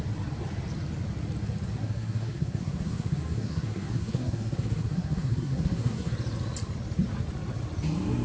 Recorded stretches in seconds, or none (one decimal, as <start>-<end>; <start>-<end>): 0.0-1.8; 6.1-8.2